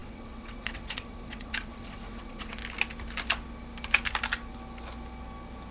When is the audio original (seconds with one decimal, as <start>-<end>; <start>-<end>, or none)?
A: 2.6-5.7